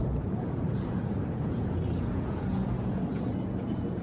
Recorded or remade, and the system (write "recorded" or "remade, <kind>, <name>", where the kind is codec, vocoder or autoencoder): remade, vocoder, Vocos